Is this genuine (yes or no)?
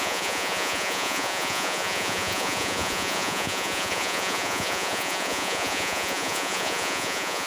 no